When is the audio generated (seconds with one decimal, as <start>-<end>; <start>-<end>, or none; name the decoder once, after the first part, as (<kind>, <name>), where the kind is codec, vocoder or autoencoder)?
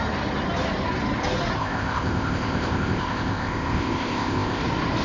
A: 1.6-4.6 (codec, ZipCodec)